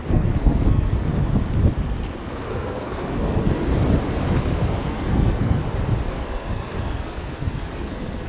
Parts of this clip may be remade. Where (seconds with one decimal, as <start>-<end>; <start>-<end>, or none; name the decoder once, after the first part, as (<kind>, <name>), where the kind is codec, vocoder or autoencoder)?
0.0-1.1 (codec, SNAC); 2.2-3.7; 4.4-5.6; 6.1-8.3